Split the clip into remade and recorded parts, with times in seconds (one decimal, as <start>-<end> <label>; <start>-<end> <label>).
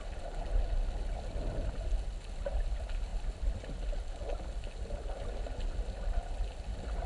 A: 0.0-7.1 recorded